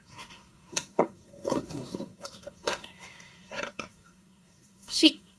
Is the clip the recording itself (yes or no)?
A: no